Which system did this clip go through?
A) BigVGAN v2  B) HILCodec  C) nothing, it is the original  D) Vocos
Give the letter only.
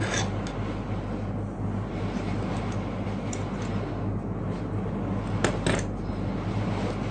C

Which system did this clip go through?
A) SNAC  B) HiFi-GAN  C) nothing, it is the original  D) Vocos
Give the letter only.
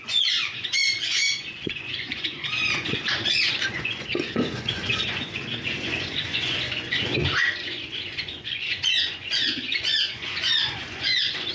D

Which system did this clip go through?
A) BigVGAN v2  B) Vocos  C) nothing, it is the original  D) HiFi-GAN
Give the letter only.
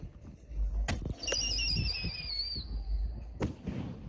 C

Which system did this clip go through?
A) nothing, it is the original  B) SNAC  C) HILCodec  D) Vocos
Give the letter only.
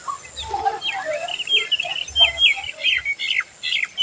A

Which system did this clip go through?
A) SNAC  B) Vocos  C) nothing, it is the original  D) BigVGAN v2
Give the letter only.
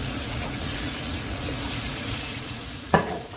B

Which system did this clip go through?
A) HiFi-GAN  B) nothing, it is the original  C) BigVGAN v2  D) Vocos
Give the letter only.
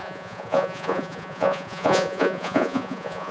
D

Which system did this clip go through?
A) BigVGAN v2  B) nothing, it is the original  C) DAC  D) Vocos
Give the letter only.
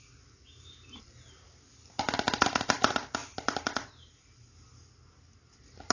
B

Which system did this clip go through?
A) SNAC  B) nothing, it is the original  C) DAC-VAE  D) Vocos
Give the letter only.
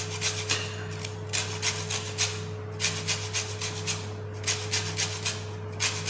B